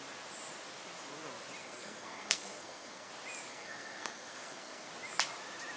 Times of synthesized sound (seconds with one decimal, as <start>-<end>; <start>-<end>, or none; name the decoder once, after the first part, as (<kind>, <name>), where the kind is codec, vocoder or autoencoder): 1.6-3.1 (codec, SNAC); 3.5-4.9